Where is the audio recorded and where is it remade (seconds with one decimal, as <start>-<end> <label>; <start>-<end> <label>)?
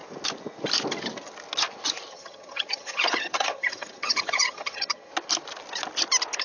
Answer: 0.0-2.1 recorded; 2.1-5.1 remade; 5.1-6.4 recorded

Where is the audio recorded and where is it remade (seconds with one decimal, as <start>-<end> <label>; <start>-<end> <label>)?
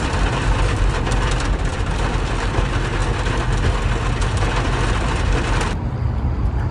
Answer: 0.0-3.0 remade; 3.0-4.8 recorded; 4.8-6.7 remade